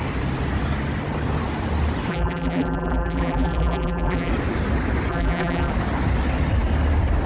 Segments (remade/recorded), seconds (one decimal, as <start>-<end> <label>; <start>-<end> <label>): 0.0-2.1 recorded; 2.1-4.3 remade; 4.3-5.1 recorded; 5.1-5.7 remade; 5.7-7.3 recorded